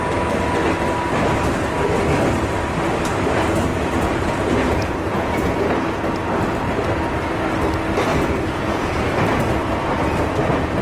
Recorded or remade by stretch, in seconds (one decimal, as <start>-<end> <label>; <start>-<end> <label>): 0.0-3.7 recorded; 3.7-5.6 remade; 5.6-8.1 recorded; 8.1-9.0 remade; 9.0-10.8 recorded